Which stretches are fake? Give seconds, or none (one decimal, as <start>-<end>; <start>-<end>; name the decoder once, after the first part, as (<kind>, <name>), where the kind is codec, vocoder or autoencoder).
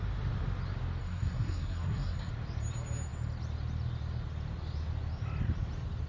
1.0-2.3 (codec, SNAC)